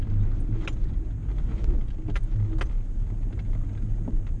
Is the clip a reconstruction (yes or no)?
no